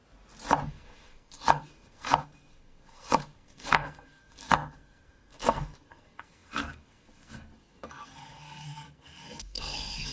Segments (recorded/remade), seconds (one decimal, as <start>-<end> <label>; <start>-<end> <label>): 0.0-0.7 recorded; 0.7-10.1 remade